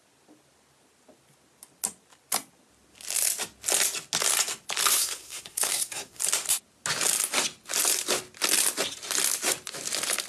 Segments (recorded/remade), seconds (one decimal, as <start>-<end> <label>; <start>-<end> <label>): 0.0-4.9 recorded; 4.9-6.2 remade; 6.2-10.3 recorded